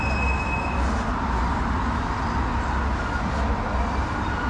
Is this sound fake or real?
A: real